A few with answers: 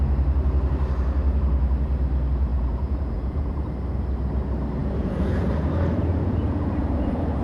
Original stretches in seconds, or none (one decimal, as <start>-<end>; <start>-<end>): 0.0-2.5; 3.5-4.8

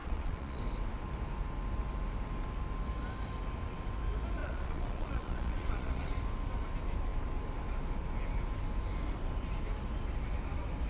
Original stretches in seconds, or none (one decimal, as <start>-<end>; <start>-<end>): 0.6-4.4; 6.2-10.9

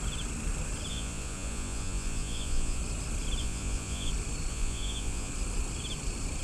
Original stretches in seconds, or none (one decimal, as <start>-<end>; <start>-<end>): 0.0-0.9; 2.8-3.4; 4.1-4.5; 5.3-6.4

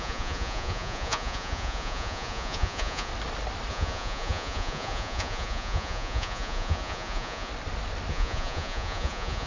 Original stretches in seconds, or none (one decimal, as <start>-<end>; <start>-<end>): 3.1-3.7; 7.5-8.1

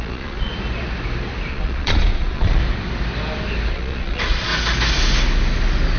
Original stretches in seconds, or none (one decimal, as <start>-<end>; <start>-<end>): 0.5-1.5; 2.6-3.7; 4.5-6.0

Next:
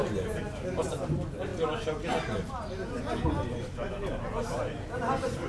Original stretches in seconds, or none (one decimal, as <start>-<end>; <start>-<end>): 0.0-5.5